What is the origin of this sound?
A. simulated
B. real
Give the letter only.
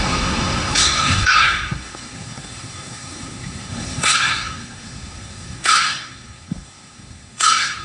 A